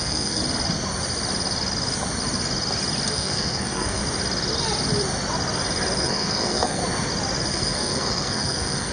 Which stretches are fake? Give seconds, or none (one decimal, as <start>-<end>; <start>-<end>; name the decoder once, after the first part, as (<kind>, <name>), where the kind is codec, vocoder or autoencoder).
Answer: 0.0-0.4 (codec, SNAC); 3.1-4.0; 6.0-6.8; 7.5-8.9

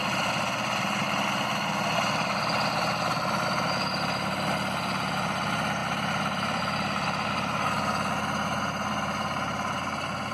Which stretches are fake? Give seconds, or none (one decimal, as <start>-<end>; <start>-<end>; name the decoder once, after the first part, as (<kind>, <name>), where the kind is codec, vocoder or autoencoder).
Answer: 0.0-1.3 (vocoder, BigVGAN v2); 5.8-6.6

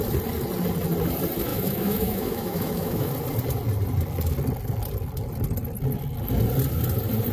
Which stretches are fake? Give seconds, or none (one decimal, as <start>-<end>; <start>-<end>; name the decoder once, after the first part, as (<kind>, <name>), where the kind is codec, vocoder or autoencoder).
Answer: 1.5-3.1 (autoencoder, DAC-VAE)

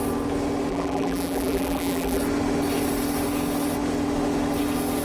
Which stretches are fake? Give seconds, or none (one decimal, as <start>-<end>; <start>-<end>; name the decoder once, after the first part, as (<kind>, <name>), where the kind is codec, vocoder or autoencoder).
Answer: 0.7-2.2 (vocoder, BigVGAN v2)

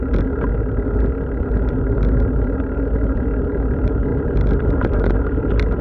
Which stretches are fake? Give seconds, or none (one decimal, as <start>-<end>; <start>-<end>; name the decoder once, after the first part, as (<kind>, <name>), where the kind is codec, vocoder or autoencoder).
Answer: none

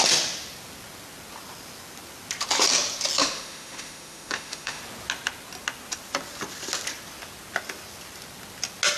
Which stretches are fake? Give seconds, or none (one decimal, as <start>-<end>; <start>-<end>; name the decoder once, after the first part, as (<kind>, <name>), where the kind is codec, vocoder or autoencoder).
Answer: 3.2-4.8 (autoencoder, DAC-VAE)

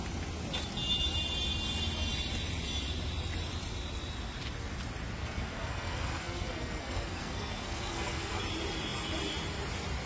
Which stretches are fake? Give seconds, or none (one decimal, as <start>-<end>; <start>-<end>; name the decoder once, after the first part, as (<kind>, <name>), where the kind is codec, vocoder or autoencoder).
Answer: 5.2-8.4 (codec, SNAC)

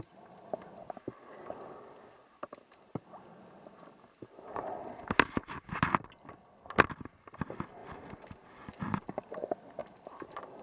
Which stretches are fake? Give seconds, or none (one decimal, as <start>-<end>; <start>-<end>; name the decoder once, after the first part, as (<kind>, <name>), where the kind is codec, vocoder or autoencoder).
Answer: none